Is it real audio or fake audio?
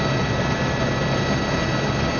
real